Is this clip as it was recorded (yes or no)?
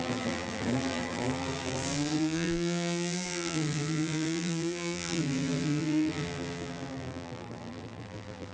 no